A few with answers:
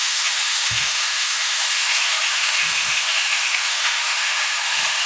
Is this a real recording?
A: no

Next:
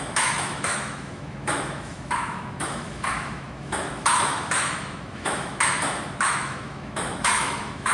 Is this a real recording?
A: no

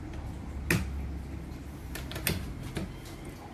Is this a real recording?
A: yes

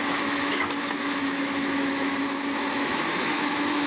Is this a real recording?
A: no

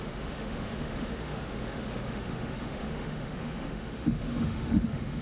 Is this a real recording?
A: no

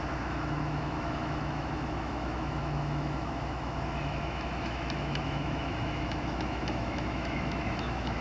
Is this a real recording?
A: no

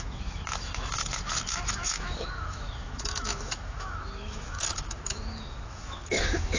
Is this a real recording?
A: no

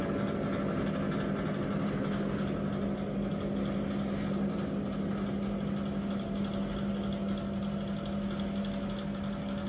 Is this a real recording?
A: yes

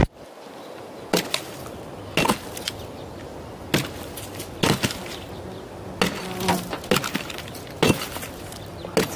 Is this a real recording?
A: yes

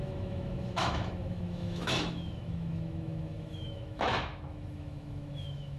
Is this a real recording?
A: no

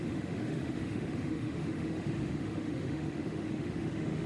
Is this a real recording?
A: no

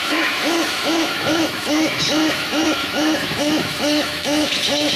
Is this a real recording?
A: no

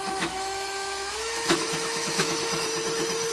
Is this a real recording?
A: no